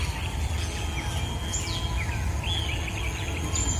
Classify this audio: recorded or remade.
recorded